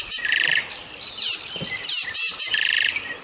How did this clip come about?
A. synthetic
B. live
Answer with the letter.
A